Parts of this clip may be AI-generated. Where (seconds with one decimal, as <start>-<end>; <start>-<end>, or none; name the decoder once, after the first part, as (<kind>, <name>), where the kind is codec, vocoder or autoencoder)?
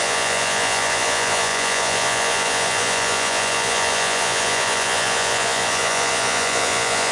0.0-7.1 (vocoder, Vocos)